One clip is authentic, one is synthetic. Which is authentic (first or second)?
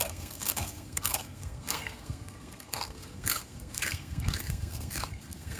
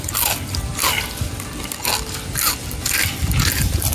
second